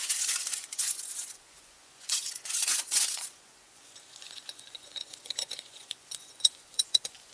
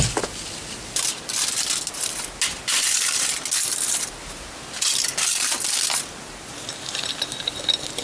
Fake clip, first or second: first